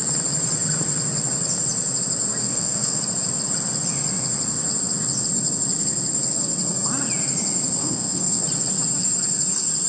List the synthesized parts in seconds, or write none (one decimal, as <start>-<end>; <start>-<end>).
2.4-3.0; 7.8-8.4